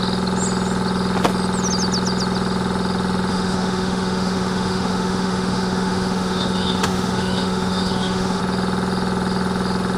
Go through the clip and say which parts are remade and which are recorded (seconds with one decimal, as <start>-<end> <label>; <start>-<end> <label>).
0.0-3.3 recorded; 3.3-8.4 remade; 8.4-10.0 recorded